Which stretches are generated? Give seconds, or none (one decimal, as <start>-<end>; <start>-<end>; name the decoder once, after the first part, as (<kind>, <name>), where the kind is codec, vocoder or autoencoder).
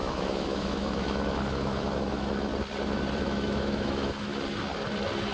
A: 0.0-2.5 (autoencoder, DAC-VAE); 3.2-4.3